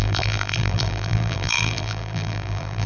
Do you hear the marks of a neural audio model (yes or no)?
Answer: yes